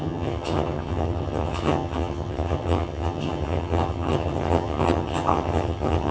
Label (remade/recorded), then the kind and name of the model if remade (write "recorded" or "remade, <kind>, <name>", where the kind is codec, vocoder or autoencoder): remade, vocoder, HiFi-GAN